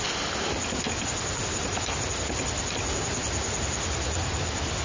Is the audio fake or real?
real